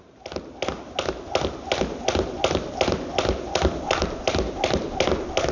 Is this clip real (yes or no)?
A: yes